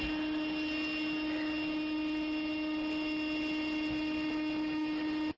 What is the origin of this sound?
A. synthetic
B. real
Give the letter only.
B